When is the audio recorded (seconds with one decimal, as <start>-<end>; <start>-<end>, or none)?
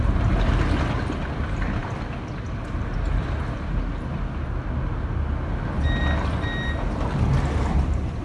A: 0.0-8.2